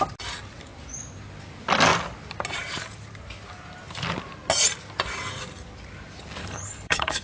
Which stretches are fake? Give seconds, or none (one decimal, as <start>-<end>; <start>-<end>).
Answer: 6.4-7.2